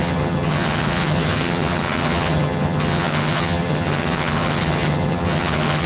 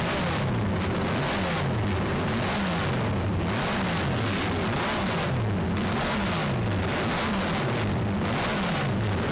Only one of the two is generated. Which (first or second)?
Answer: first